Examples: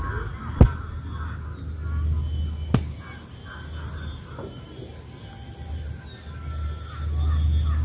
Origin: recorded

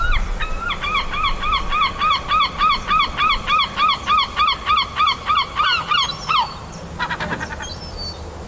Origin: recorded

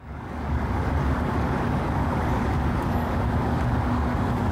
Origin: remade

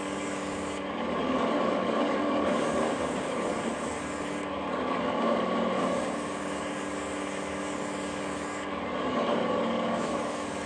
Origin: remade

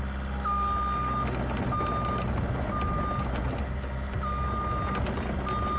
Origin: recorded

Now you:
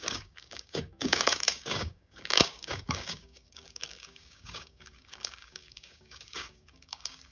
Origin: remade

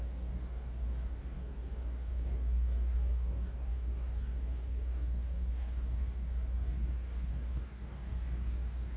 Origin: remade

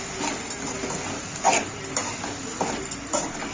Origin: recorded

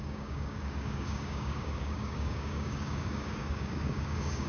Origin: remade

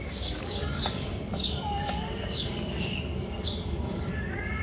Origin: remade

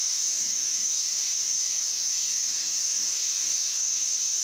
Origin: remade